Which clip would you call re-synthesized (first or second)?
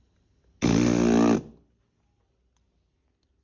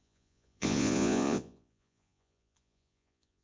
second